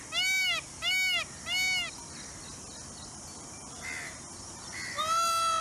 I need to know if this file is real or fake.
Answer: real